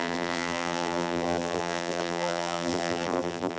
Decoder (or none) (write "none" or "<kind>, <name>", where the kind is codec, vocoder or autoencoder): vocoder, BigVGAN v2